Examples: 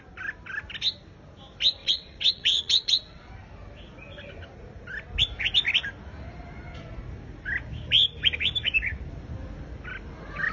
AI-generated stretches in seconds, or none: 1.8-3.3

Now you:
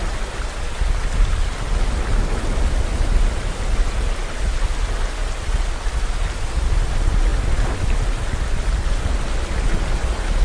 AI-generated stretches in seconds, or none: none

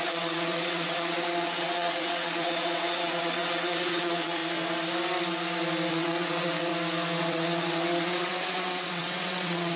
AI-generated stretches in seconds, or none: 0.0-4.4; 5.9-6.7; 7.2-9.8

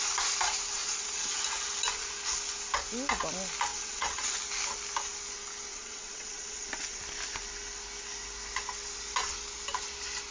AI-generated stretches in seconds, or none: 0.8-1.4; 3.7-4.4; 5.7-7.0